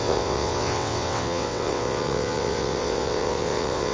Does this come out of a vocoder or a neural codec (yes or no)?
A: yes